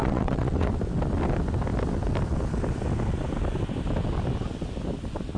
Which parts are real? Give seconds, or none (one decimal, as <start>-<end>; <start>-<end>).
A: 0.7-5.4